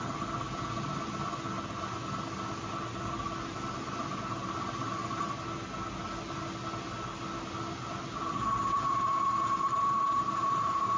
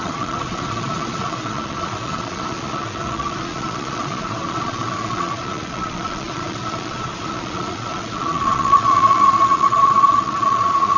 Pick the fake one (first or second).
second